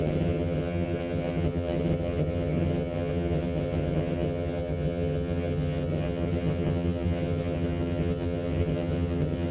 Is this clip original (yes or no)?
no